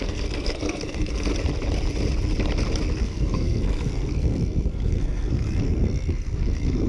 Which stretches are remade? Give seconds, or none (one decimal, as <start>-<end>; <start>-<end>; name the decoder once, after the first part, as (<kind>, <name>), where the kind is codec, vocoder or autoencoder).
0.0-1.3 (codec, SNAC); 2.9-6.9